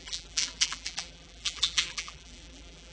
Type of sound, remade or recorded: remade